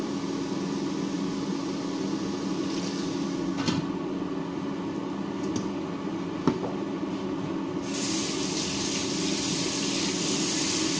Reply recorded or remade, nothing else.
recorded